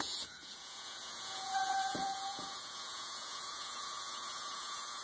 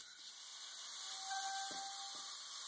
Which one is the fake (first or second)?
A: first